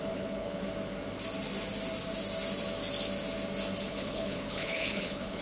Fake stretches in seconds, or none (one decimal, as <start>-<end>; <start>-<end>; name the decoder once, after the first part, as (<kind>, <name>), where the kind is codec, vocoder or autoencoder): 0.0-0.6 (codec, HILCodec); 3.8-5.4